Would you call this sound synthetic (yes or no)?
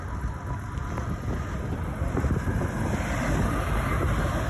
no